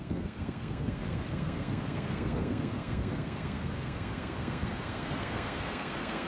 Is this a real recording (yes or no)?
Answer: no